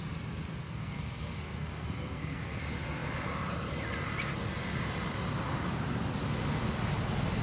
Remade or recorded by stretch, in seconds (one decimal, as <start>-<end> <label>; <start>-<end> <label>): 0.0-0.6 recorded; 0.6-2.6 remade; 2.6-7.4 recorded